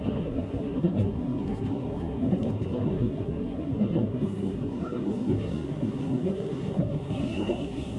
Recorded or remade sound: remade